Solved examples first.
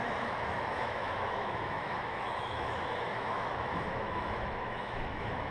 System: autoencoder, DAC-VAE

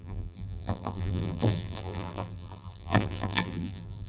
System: vocoder, BigVGAN v2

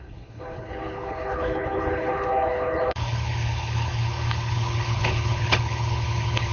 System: codec, HILCodec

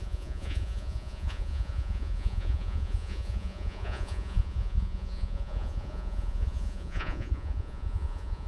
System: vocoder, Vocos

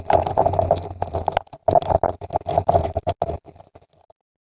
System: none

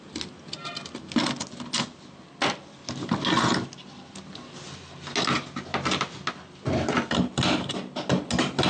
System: none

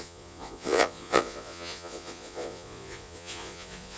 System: vocoder, Vocos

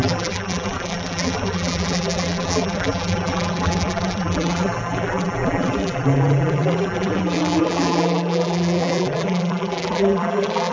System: vocoder, BigVGAN v2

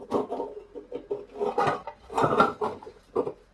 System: none